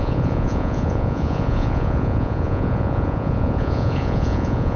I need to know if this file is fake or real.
fake